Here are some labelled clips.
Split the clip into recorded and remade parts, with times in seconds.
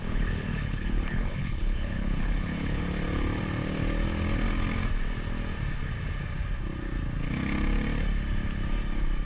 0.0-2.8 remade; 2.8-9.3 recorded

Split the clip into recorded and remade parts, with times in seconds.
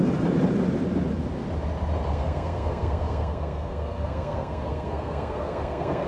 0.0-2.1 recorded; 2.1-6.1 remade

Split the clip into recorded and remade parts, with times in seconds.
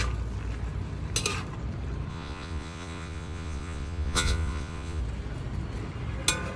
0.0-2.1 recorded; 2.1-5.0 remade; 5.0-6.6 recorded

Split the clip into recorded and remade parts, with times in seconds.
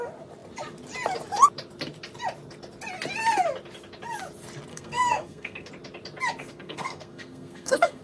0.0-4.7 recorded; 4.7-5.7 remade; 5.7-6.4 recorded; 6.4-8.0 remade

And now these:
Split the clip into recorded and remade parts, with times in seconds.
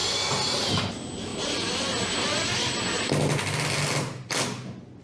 0.0-5.0 recorded